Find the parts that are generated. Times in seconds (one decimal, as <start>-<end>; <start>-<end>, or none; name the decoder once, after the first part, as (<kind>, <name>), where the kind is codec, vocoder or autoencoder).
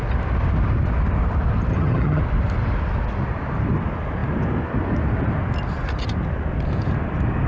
1.7-2.2 (vocoder, HiFi-GAN)